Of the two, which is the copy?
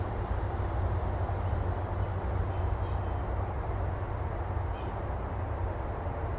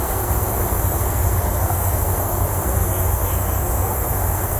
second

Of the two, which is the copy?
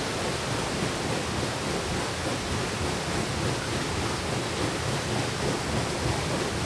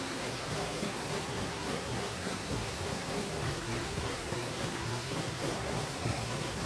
second